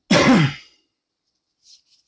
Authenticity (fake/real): real